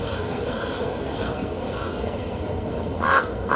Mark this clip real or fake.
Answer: fake